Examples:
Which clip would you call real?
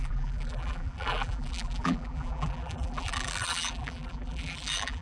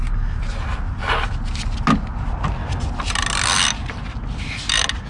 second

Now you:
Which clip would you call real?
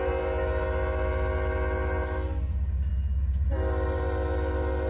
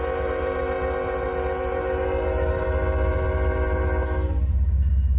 first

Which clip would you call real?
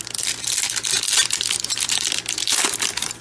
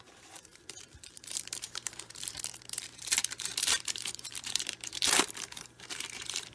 first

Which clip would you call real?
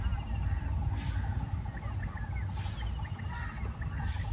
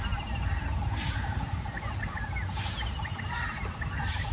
first